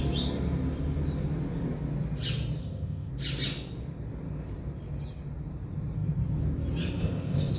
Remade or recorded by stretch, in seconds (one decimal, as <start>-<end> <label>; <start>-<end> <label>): 0.0-2.6 recorded; 2.6-3.1 remade; 3.1-7.0 recorded; 7.0-7.6 remade